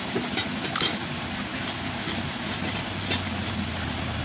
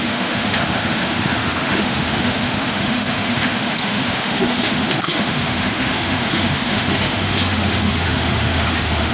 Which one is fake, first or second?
second